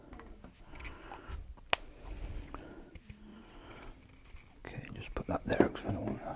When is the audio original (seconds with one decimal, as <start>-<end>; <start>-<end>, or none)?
0.0-3.3; 3.8-6.4